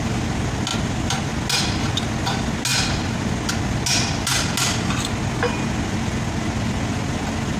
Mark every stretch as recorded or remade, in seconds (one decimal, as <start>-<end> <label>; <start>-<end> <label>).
0.0-7.6 recorded